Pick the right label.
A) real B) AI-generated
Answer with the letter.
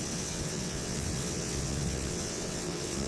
B